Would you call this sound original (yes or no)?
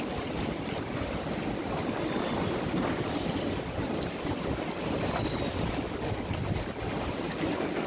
yes